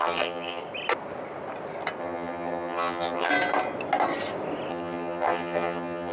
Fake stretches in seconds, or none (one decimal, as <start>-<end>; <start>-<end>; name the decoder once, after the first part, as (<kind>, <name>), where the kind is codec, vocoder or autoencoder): 0.0-0.6 (vocoder, HiFi-GAN); 2.0-3.3; 4.7-6.1